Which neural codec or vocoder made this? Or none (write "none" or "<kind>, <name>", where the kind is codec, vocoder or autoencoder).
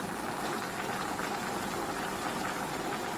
none